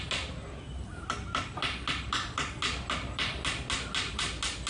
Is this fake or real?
real